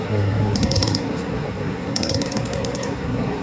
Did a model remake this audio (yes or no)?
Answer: yes